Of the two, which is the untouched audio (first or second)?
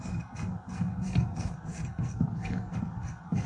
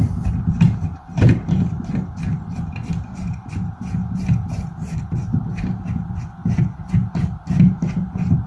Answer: second